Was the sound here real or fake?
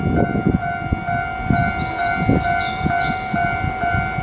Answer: real